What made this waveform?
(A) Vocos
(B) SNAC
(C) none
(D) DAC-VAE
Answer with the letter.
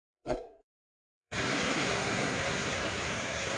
B